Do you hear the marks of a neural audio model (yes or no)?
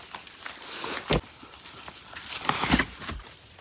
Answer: no